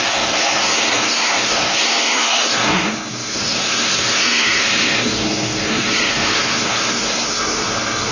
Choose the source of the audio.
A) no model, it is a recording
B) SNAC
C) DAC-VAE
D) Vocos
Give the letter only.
B